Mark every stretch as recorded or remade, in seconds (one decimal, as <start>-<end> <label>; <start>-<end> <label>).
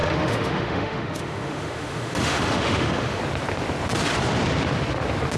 0.0-3.2 remade; 3.2-5.4 recorded